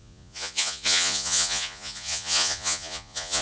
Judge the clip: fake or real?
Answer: fake